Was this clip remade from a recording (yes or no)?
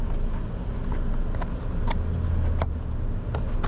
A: no